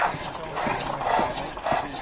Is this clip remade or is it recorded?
recorded